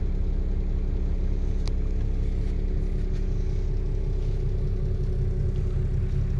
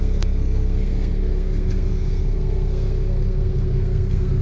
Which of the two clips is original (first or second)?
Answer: first